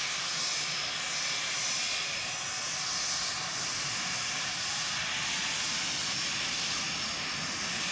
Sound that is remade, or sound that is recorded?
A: recorded